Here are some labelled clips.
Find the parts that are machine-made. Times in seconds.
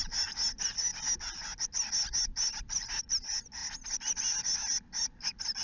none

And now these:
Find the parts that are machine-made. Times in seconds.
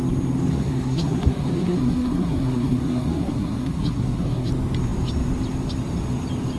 0.5-4.5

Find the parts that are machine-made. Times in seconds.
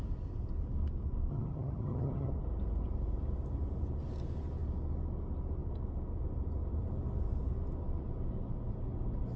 1.3-2.3